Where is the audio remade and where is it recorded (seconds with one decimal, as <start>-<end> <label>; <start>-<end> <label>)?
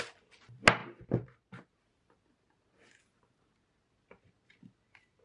0.0-5.2 recorded